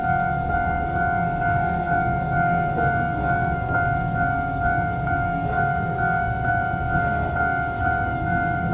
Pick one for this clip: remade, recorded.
remade